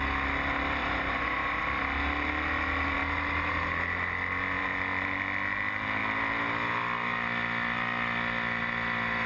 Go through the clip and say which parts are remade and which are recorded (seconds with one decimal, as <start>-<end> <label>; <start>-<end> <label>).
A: 0.0-0.8 recorded; 0.8-1.6 remade; 1.6-9.3 recorded